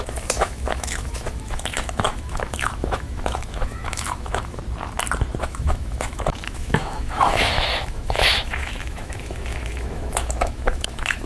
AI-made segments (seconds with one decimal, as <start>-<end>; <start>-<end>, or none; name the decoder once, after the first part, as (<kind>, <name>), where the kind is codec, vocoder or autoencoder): 0.0-4.6 (autoencoder, DAC-VAE); 5.4-11.3

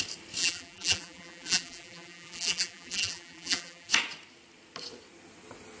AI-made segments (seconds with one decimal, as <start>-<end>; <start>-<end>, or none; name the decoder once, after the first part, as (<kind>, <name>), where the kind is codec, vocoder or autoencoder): 0.4-3.9 (vocoder, BigVGAN v2)